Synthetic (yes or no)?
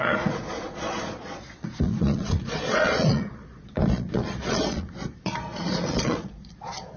yes